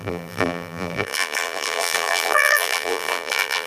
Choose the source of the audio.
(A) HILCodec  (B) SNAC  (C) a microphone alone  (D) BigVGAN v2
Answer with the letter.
D